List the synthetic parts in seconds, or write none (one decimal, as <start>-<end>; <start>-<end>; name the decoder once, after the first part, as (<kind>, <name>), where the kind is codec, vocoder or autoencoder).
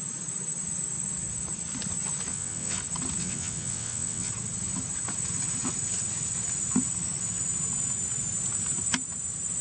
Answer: 2.3-2.8 (vocoder, WaveNeXt); 3.2-4.3